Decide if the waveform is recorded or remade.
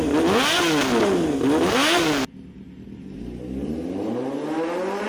recorded